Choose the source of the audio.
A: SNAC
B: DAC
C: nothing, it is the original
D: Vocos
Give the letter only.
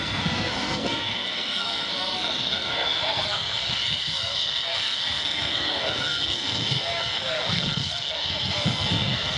A